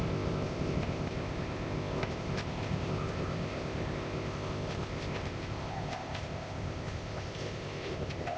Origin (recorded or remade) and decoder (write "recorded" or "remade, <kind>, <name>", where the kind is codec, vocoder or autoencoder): remade, codec, ZipCodec